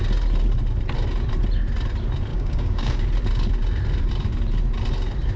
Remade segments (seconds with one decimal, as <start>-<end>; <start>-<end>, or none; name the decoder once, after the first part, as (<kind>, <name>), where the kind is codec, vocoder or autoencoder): 2.3-3.1 (codec, DAC)